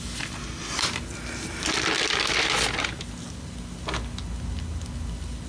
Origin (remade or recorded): recorded